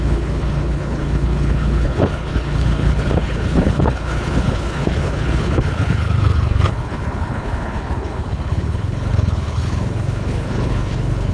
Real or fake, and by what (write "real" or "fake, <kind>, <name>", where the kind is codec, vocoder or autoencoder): fake, codec, HILCodec